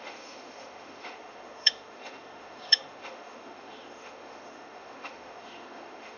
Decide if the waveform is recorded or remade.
remade